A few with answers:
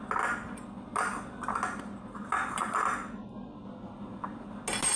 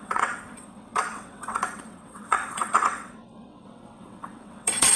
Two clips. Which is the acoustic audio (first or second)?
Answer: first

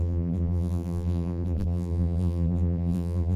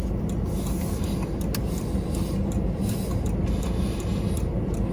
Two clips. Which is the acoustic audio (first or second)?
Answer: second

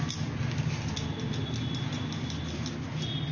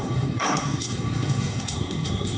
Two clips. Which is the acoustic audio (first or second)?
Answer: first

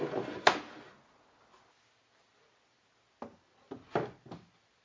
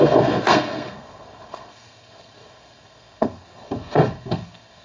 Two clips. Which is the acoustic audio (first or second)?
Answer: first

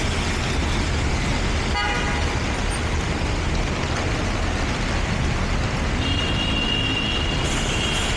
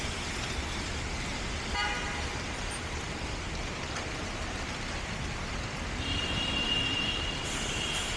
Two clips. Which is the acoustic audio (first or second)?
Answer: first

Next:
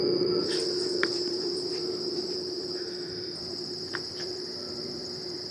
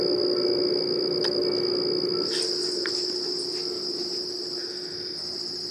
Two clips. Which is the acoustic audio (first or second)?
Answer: second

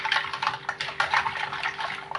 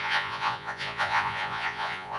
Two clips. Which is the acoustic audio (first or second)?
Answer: first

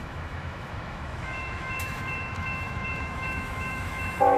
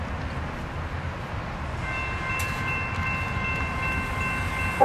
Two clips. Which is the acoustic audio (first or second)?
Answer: second